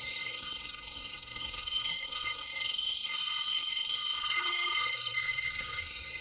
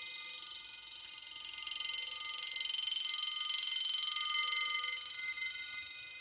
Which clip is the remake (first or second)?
first